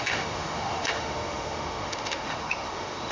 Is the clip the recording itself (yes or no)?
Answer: no